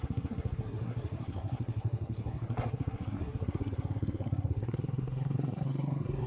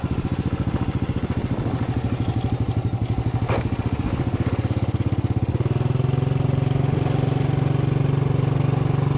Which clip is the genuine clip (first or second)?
second